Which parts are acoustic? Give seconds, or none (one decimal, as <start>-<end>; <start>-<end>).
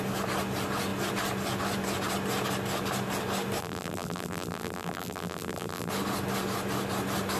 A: 0.0-3.6; 5.9-7.4